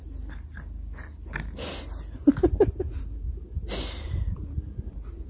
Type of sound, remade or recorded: recorded